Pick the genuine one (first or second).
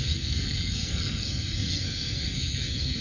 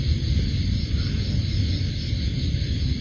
second